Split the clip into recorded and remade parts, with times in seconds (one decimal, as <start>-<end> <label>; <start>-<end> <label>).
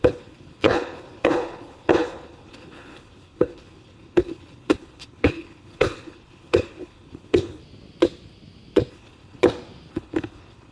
0.0-7.6 remade; 7.6-8.9 recorded; 8.9-9.4 remade; 9.4-9.9 recorded; 9.9-10.7 remade